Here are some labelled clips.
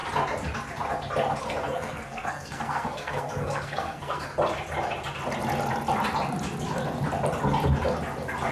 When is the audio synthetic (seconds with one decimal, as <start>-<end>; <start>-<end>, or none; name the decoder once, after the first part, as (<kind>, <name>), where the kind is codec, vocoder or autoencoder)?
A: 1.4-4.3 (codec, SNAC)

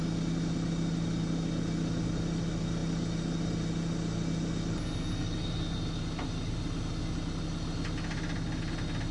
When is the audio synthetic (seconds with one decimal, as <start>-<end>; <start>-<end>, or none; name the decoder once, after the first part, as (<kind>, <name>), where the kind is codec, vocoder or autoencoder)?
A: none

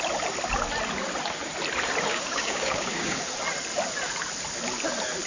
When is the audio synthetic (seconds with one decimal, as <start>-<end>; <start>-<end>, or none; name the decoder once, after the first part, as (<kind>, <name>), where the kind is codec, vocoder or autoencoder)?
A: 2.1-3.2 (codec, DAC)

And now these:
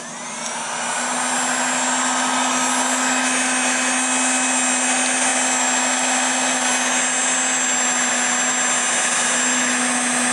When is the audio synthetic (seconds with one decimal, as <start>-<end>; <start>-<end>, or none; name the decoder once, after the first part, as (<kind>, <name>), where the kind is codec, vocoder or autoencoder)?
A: none

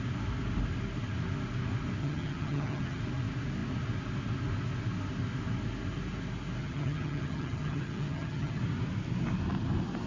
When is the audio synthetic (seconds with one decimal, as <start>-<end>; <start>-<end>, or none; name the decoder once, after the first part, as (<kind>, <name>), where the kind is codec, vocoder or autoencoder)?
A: 2.0-3.0 (vocoder, HiFi-GAN); 6.6-8.6